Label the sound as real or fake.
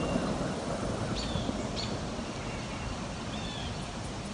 real